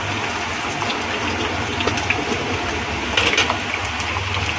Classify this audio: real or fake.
real